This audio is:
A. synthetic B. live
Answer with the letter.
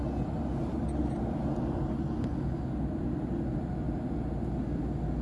B